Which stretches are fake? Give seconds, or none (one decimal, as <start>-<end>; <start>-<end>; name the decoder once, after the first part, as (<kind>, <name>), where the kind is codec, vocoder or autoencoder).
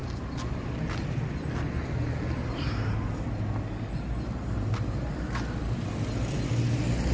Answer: none